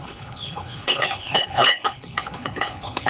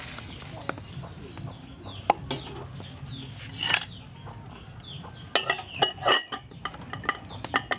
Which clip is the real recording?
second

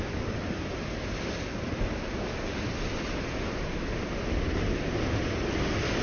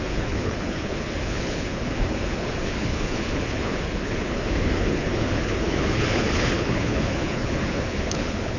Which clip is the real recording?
first